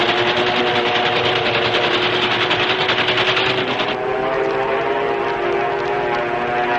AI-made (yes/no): no